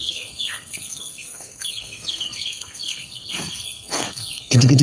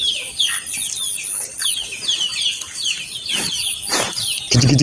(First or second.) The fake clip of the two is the first